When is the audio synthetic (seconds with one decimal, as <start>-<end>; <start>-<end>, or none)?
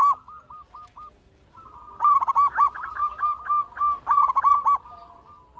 none